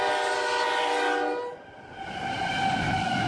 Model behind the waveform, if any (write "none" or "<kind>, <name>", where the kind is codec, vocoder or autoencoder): none